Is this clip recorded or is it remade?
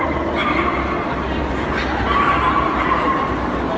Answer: recorded